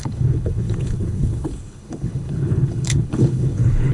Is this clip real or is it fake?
fake